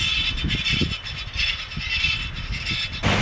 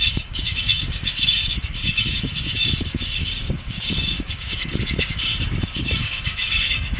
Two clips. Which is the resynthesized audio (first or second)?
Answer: second